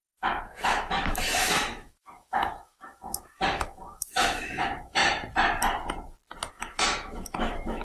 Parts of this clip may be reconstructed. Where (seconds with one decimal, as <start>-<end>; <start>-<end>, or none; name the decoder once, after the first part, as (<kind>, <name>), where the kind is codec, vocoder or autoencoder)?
0.0-5.0 (autoencoder, DAC-VAE); 6.5-7.8

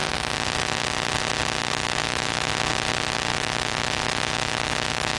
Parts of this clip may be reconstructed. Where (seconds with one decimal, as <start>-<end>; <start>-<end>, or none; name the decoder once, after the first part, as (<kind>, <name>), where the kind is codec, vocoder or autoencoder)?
2.0-2.5 (autoencoder, DAC-VAE); 3.3-5.2

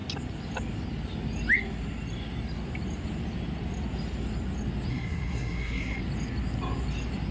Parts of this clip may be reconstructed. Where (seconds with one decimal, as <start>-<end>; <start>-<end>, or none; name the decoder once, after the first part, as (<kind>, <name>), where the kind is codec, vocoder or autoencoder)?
4.9-6.0 (codec, SNAC)

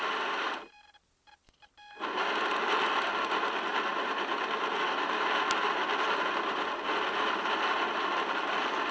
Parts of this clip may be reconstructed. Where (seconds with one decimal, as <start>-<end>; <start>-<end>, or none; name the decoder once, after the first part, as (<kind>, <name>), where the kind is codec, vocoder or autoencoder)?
none

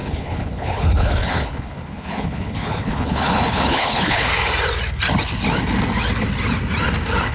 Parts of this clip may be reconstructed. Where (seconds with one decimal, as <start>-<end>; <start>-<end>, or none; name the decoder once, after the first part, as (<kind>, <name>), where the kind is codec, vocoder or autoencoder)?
0.0-4.3 (codec, HILCodec)

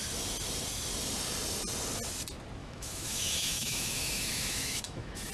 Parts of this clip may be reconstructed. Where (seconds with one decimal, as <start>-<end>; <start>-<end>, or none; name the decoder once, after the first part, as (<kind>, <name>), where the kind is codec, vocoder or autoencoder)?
2.6-5.3 (autoencoder, DAC-VAE)

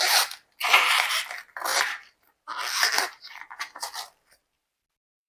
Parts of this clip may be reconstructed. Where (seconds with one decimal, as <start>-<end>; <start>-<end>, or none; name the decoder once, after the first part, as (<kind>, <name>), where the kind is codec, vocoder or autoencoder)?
0.6-1.2 (vocoder, BigVGAN v2); 1.7-5.3

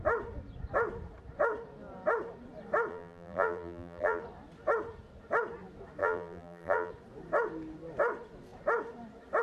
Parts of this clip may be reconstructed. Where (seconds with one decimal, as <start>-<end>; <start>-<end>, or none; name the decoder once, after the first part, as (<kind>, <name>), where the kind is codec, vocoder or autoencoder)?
2.9-4.2 (vocoder, BigVGAN v2); 6.0-6.9